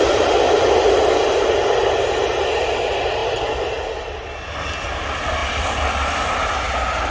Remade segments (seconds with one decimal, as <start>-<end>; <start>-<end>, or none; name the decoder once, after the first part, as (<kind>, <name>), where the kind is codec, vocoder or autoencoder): none